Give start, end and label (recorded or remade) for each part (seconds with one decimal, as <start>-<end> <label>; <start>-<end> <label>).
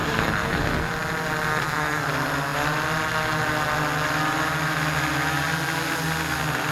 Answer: 0.0-0.9 remade; 0.9-1.5 recorded; 1.5-2.1 remade; 2.1-6.7 recorded